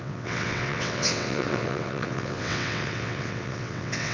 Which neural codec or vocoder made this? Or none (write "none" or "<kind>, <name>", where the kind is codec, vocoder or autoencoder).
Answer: vocoder, WaveNeXt